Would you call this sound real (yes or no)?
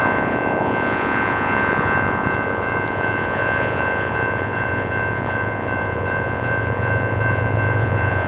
no